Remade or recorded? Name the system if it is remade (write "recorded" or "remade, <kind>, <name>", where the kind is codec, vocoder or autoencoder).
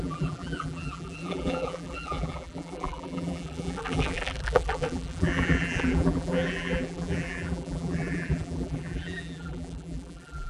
remade, vocoder, BigVGAN v2